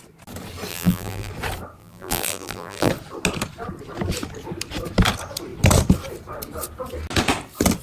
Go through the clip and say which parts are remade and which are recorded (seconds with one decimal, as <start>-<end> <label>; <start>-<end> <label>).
0.0-0.7 recorded; 0.7-1.3 remade; 1.3-1.8 recorded; 1.8-2.9 remade; 2.9-7.8 recorded